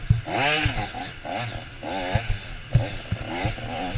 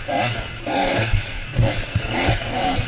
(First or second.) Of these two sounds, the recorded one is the first